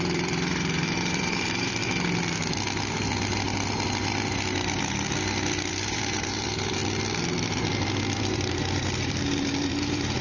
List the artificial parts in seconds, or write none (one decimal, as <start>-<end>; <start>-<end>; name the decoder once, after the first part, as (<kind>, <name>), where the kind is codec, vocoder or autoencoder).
0.0-1.8 (vocoder, BigVGAN v2); 5.7-6.8; 8.2-10.2